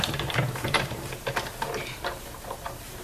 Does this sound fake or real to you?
fake